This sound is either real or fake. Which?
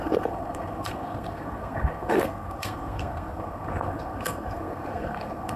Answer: fake